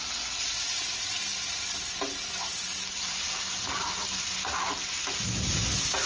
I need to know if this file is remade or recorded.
recorded